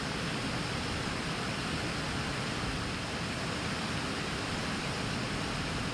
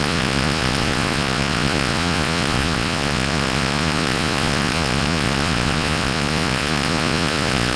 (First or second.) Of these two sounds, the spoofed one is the second